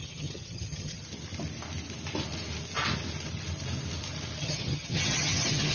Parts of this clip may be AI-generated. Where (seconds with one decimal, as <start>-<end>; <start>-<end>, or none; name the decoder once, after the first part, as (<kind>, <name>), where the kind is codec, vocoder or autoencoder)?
0.0-1.0 (vocoder, HiFi-GAN); 4.4-5.7